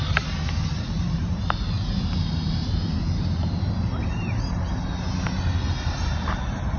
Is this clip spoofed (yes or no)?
yes